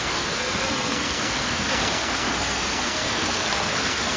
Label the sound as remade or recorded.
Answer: remade